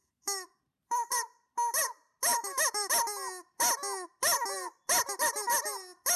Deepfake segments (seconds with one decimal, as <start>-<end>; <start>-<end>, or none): 0.0-0.6; 2.3-2.9